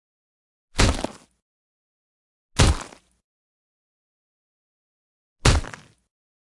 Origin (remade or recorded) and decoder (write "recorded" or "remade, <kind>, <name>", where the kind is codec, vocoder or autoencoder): recorded